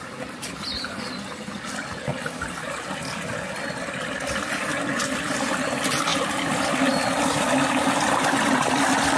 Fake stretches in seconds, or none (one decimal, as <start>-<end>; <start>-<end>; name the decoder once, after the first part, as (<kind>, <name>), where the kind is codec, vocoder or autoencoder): 0.0-2.1 (vocoder, BigVGAN v2); 5.0-9.2